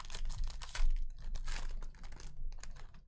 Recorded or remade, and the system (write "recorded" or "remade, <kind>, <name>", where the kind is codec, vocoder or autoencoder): recorded